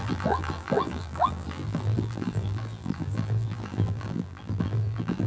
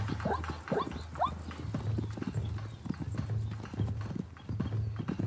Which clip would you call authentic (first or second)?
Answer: second